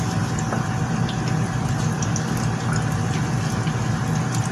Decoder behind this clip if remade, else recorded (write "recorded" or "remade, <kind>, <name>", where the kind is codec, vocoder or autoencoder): recorded